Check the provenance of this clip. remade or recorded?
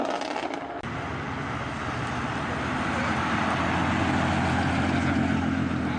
recorded